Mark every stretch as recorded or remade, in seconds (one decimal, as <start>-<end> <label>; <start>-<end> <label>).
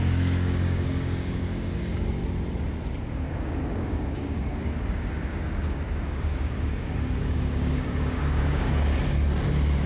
0.0-2.2 remade; 2.2-3.0 recorded; 3.0-8.9 remade; 8.9-9.9 recorded